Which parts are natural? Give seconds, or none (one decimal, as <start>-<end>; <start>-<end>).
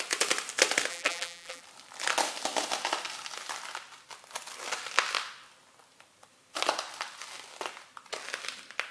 0.0-0.9; 1.6-8.9